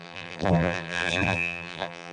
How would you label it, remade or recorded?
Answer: remade